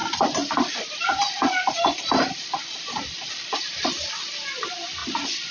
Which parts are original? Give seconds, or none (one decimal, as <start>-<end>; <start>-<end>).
3.3-5.0